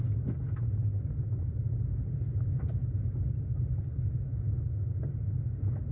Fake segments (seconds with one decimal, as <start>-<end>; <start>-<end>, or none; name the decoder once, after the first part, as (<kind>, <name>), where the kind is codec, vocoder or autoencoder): none

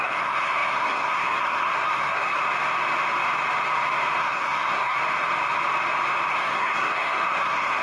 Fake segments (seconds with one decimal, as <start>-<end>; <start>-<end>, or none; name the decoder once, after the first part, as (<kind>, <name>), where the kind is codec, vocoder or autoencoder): 0.0-2.4 (codec, SNAC); 4.2-5.0; 6.3-7.8

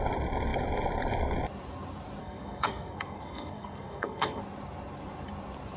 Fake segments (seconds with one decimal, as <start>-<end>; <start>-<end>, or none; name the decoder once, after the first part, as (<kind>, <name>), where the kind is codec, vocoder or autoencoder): 2.2-4.4 (codec, SNAC)

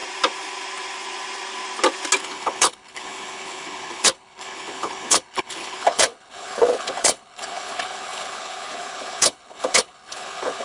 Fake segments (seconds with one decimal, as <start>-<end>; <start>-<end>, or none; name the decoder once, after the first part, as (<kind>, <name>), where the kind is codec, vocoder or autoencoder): 2.2-10.6 (codec, HILCodec)

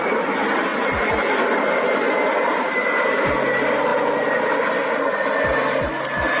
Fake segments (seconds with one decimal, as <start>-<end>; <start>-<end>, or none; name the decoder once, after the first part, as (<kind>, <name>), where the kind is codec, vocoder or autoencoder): none

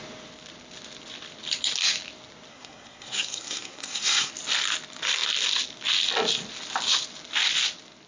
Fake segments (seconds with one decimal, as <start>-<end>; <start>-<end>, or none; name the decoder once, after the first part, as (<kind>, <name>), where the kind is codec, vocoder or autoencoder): 2.5-4.3 (codec, SNAC)